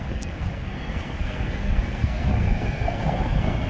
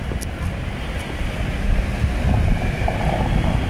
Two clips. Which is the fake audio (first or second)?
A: first